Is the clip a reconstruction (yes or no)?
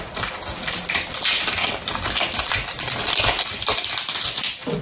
no